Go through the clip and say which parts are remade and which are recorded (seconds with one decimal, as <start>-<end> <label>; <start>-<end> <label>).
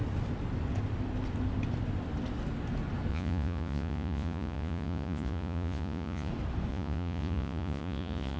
0.0-3.1 recorded; 3.1-6.3 remade; 6.3-6.7 recorded; 6.7-8.4 remade